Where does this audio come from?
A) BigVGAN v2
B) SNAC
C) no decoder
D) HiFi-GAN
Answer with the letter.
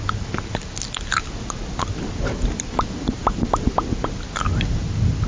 C